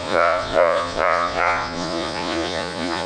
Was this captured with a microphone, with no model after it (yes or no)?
no